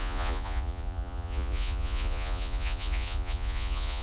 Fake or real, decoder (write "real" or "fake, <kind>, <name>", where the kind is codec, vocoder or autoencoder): fake, vocoder, Vocos